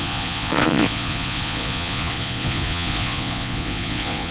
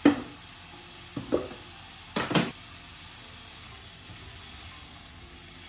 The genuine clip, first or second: second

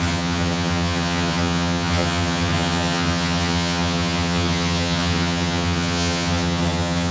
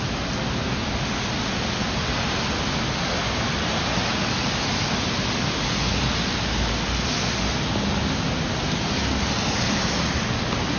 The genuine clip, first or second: second